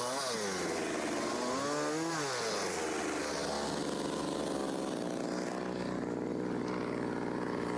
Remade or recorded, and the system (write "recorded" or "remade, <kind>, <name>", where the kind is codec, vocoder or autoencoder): recorded